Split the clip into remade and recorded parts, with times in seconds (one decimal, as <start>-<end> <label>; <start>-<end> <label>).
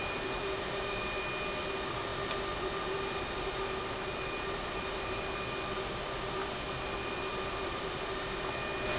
0.0-2.1 recorded; 2.1-2.7 remade; 2.7-9.0 recorded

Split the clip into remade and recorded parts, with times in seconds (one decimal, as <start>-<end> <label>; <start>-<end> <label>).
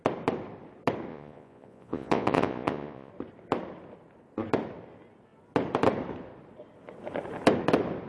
0.0-1.1 recorded; 1.1-3.1 remade; 3.1-8.1 recorded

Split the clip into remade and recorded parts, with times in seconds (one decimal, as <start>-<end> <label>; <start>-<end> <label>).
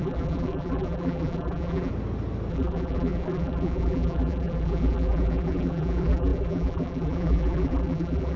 0.0-1.9 remade; 1.9-2.5 recorded; 2.5-8.4 remade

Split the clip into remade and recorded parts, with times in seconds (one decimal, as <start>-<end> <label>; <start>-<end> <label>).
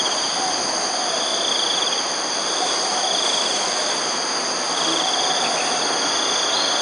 0.0-1.3 recorded; 1.3-5.1 remade; 5.1-6.8 recorded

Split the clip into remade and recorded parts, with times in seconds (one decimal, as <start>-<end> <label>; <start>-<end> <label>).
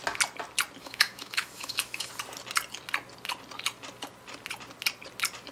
0.0-0.8 recorded; 0.8-2.1 remade; 2.1-5.5 recorded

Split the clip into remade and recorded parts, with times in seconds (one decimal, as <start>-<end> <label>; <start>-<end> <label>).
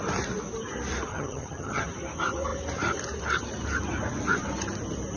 0.0-1.1 recorded; 1.1-1.8 remade; 1.8-5.2 recorded